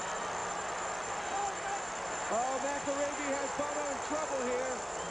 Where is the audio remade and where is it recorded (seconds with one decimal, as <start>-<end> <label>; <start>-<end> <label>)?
0.0-5.1 recorded